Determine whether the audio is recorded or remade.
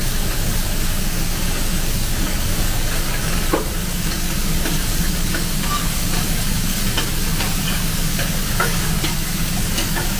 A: remade